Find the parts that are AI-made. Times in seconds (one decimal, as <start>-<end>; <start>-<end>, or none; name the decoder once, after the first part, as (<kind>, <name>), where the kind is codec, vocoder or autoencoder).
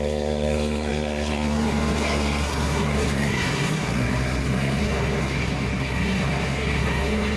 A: 0.0-7.4 (codec, SNAC)